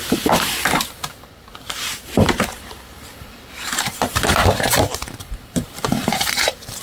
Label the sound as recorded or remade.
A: remade